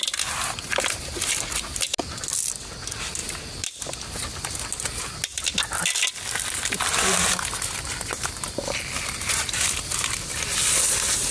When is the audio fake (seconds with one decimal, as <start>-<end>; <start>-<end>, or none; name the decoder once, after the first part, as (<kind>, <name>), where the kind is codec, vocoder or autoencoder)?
3.2-3.8 (vocoder, BigVGAN v2)